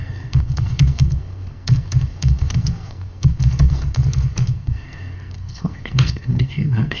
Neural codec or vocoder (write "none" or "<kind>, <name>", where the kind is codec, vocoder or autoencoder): codec, SNAC